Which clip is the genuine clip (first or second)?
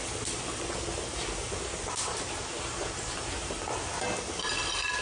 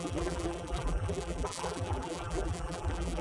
first